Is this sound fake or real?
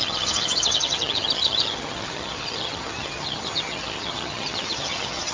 fake